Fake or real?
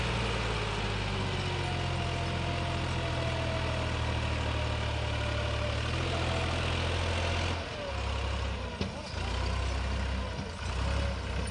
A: real